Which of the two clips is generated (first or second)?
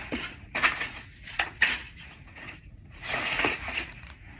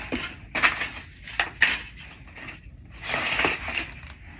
first